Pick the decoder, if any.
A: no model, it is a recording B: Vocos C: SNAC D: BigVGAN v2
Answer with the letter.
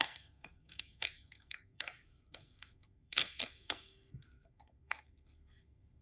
C